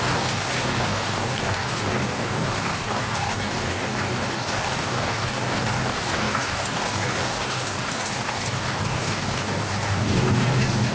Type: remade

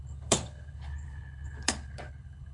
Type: remade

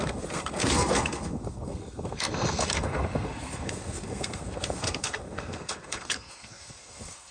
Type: remade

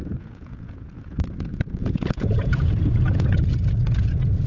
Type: remade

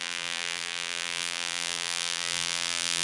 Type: remade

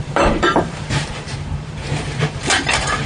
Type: remade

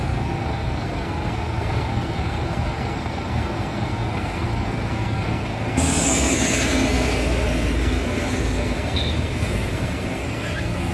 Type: remade